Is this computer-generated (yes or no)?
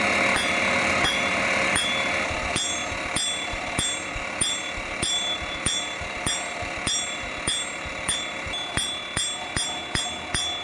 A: yes